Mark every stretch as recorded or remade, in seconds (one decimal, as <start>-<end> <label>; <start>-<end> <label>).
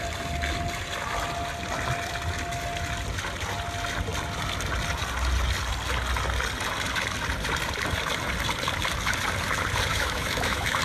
0.0-9.9 recorded; 9.9-10.8 remade